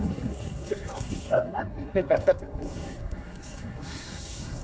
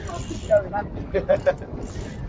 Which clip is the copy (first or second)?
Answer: first